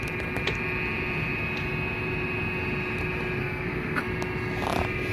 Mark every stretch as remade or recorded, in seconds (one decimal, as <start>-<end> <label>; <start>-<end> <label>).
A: 0.0-3.4 recorded; 3.4-4.0 remade; 4.0-5.1 recorded